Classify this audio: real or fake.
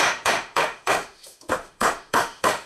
fake